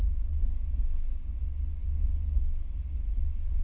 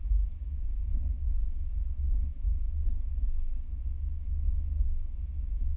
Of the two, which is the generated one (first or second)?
second